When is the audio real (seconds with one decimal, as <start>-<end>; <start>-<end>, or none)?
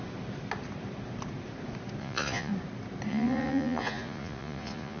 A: 0.0-2.0; 2.5-3.1